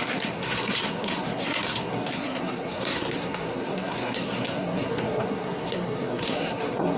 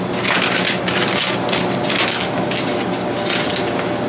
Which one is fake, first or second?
first